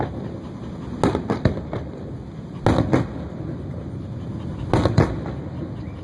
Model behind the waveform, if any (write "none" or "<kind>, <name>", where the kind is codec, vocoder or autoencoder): none